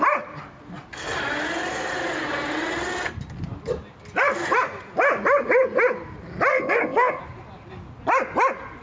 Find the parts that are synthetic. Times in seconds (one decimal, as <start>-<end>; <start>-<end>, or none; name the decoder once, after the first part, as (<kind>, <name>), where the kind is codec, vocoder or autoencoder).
6.5-7.2 (codec, ZipCodec)